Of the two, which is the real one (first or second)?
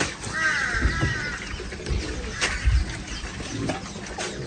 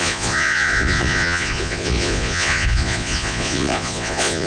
first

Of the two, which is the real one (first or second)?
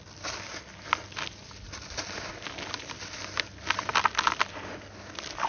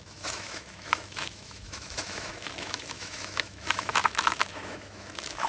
first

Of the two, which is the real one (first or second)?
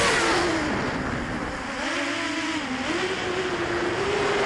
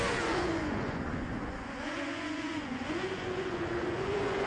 first